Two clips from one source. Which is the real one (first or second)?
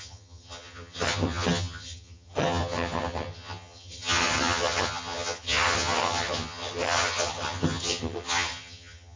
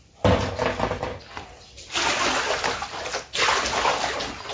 second